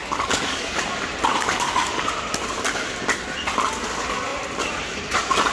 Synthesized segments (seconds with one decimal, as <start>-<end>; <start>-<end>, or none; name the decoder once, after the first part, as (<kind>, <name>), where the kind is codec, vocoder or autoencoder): 0.0-0.8 (codec, DAC); 1.3-2.0

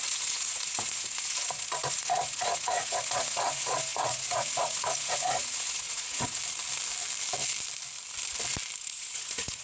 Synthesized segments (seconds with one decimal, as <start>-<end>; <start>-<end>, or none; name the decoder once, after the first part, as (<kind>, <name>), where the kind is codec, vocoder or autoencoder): 0.0-6.4 (vocoder, Vocos); 8.8-9.6

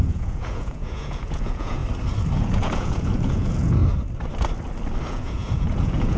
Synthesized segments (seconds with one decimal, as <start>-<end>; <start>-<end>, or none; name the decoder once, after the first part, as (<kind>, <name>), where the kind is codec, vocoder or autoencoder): 0.0-1.8 (vocoder, Vocos); 2.4-3.8; 5.1-6.2

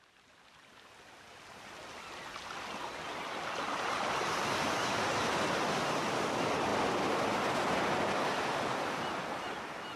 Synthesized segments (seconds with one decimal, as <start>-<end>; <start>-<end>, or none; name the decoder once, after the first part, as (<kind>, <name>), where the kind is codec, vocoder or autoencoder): none